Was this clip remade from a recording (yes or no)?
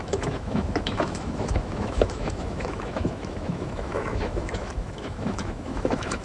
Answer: yes